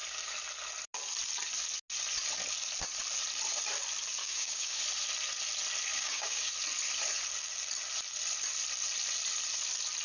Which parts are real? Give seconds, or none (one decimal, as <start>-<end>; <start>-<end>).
0.0-4.2; 4.8-5.9; 6.5-10.0